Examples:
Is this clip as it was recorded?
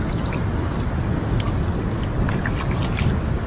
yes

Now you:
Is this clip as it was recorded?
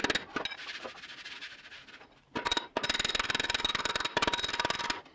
yes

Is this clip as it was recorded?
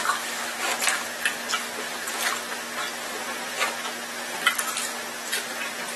yes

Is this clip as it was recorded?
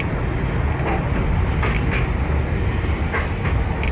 yes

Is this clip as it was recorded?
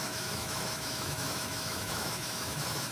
no